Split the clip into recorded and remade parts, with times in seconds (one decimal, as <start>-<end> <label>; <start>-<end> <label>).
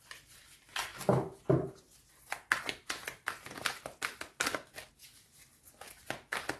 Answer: 0.0-6.6 recorded